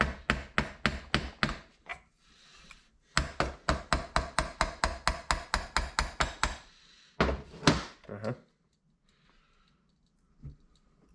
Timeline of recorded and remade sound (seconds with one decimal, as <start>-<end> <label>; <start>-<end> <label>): 0.0-1.9 recorded; 1.9-2.9 remade; 2.9-11.1 recorded